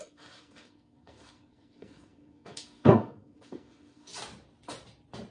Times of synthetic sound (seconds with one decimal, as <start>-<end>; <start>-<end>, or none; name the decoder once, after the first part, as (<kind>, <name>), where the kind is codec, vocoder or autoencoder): 0.0-4.1 (codec, SNAC)